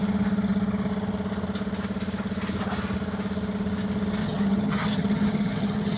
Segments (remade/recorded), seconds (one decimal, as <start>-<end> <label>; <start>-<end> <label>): 0.0-4.2 recorded; 4.2-6.0 remade